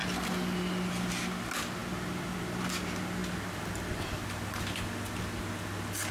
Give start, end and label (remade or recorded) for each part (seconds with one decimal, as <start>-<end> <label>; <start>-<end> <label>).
0.0-6.1 recorded